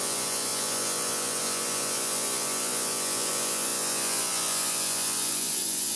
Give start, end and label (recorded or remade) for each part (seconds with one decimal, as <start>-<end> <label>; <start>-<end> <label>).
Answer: 0.0-6.0 remade

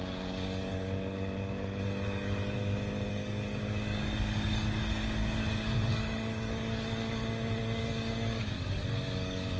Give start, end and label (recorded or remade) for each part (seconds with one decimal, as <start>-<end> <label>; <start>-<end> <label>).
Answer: 0.0-2.6 remade; 2.6-3.1 recorded; 3.1-9.6 remade